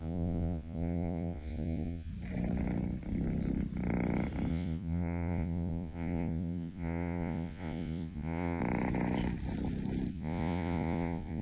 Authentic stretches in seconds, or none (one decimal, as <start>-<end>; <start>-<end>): 2.1-4.5; 8.6-10.1